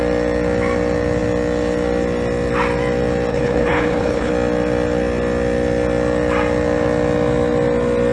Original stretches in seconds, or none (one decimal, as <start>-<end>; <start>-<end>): 0.0-3.3; 4.3-8.1